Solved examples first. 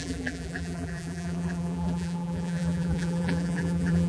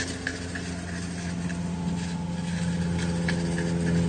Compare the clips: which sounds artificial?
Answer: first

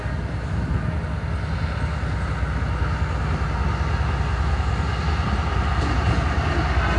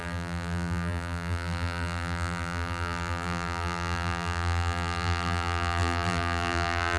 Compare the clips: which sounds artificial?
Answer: second